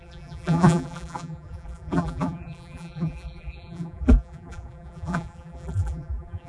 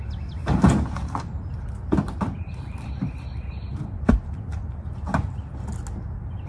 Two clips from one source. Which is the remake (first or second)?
first